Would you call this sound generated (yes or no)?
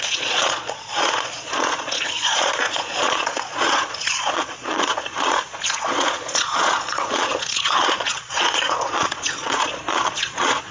yes